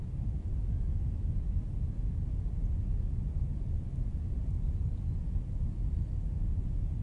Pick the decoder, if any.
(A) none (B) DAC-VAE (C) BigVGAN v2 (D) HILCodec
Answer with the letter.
A